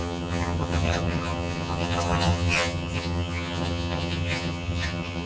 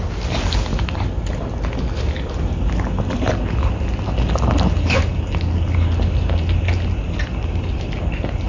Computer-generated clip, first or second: first